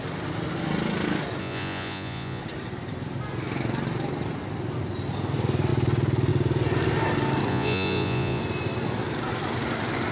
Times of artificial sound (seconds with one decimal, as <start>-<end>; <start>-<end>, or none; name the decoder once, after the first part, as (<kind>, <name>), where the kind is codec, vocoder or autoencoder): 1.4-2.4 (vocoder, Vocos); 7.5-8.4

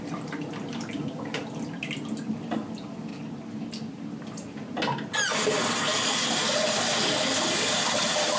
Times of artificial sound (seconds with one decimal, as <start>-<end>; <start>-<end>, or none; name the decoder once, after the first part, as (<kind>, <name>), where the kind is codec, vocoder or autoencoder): 0.0-1.4 (vocoder, BigVGAN v2); 2.3-3.1; 7.9-8.4

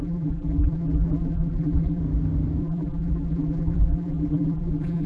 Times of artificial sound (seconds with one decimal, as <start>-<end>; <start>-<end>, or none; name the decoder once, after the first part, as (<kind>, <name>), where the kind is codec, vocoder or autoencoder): 0.0-2.0 (vocoder, BigVGAN v2); 2.6-5.1

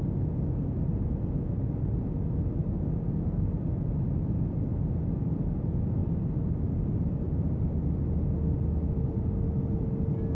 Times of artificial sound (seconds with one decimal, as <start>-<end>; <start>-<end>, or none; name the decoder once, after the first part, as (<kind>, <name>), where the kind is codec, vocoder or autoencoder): none

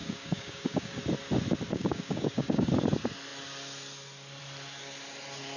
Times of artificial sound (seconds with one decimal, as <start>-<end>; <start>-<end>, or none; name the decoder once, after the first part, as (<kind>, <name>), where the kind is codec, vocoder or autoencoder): 0.0-1.0 (codec, DAC); 1.7-2.7

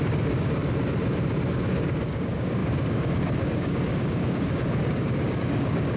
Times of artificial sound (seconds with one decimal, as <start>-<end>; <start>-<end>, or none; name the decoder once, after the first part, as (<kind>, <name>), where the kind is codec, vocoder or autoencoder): 0.0-0.6 (codec, DAC); 1.5-6.0